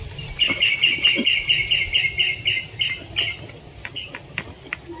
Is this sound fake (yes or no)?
no